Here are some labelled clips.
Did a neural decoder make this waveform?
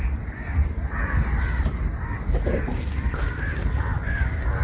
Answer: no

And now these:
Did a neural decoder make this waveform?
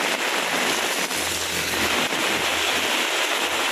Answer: no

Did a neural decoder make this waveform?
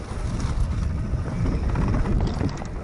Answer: no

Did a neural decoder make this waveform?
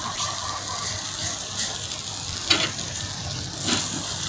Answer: no